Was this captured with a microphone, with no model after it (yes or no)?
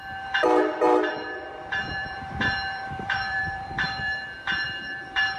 no